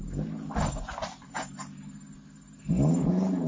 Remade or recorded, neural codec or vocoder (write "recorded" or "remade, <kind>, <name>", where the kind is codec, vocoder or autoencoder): recorded